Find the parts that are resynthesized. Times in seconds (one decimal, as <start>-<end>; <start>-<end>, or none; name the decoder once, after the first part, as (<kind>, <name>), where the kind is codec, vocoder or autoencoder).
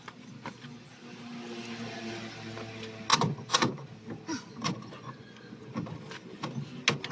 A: 3.1-3.9 (vocoder, Vocos); 4.3-5.7